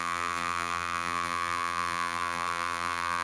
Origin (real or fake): fake